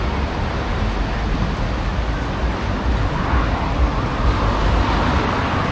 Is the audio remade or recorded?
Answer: recorded